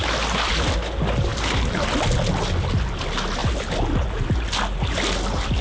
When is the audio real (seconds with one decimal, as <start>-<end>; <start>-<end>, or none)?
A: 0.0-5.6